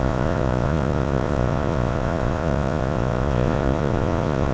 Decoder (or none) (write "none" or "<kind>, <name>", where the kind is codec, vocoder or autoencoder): vocoder, Vocos